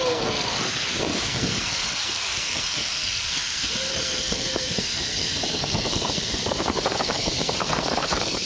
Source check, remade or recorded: remade